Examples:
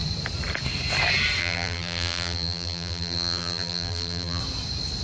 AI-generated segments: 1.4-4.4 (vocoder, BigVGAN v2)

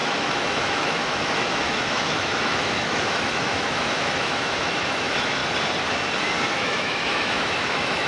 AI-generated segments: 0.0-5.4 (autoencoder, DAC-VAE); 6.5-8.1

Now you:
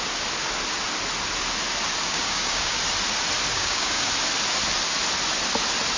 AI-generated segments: 2.0-2.8 (codec, DAC); 3.5-4.1

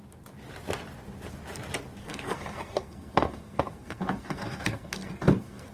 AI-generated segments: 2.0-5.7 (codec, SNAC)